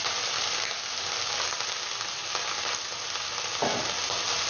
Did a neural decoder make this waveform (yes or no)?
no